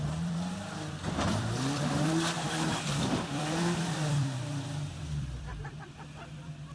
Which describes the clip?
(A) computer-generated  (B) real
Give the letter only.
A